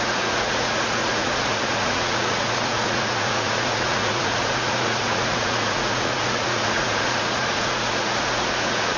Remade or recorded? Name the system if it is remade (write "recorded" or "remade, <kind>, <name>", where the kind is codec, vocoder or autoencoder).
remade, vocoder, Vocos